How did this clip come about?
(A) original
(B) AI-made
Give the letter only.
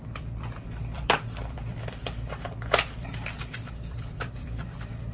B